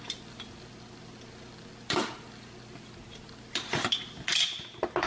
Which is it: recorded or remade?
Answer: recorded